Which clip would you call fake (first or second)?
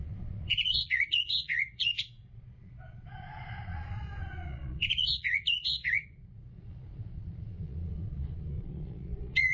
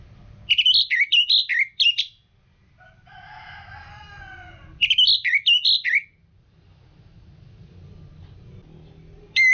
first